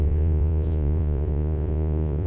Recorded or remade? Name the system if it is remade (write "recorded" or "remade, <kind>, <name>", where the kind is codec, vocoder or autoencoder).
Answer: remade, vocoder, Vocos